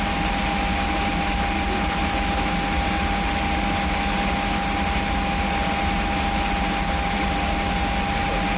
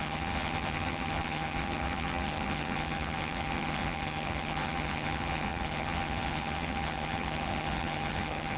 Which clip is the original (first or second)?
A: first